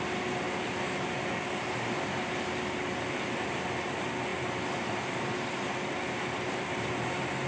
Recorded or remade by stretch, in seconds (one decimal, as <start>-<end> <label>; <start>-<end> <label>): 0.0-7.5 recorded